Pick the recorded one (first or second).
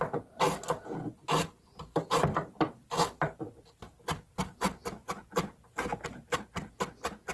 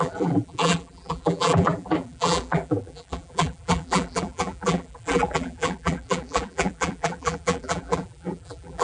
first